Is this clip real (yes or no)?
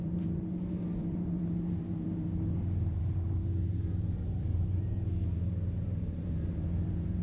no